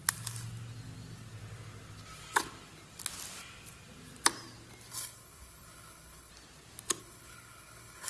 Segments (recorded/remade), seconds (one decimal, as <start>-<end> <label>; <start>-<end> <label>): 0.0-4.9 recorded; 4.9-6.3 remade; 6.3-7.0 recorded; 7.0-8.1 remade